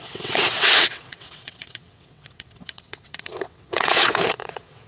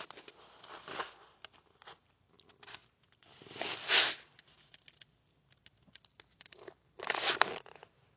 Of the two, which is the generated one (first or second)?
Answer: first